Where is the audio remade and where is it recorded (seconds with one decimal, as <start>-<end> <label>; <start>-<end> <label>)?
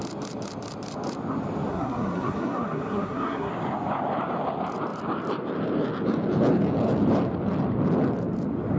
0.0-1.7 recorded; 1.7-3.5 remade; 3.5-8.8 recorded